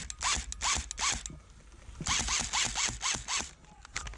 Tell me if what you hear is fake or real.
real